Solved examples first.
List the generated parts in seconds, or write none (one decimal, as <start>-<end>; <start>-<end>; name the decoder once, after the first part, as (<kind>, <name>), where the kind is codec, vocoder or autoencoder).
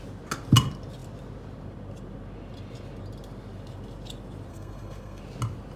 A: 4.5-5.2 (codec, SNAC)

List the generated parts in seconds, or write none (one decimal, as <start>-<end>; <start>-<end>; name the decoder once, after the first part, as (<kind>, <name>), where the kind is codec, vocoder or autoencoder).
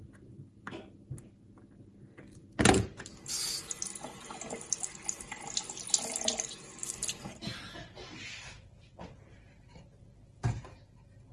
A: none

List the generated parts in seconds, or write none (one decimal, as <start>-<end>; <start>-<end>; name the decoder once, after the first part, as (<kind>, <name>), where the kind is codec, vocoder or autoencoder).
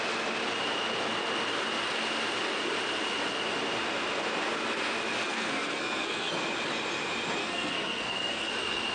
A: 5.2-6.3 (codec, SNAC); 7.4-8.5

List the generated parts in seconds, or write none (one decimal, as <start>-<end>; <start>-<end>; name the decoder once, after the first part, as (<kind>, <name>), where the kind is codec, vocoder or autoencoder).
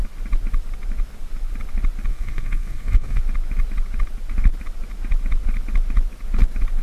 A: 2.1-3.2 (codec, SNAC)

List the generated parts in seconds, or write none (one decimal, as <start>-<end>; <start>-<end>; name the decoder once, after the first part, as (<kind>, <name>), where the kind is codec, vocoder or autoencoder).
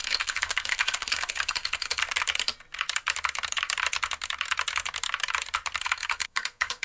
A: 0.0-2.0 (codec, SNAC); 5.8-6.8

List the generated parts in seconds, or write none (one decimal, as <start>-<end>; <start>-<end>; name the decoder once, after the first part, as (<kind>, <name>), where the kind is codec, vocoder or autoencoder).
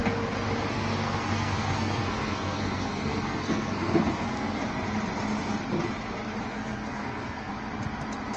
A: 0.7-4.6 (codec, SNAC); 6.5-7.5